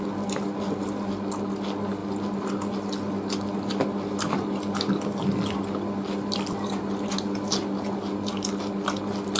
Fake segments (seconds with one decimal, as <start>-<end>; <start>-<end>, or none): none